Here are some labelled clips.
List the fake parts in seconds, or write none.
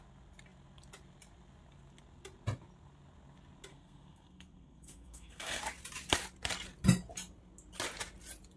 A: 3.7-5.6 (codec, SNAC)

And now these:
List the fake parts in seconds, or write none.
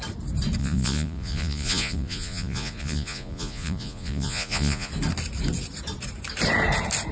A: 0.6-4.9 (vocoder, Vocos)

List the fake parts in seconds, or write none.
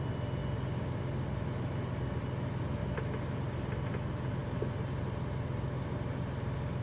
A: none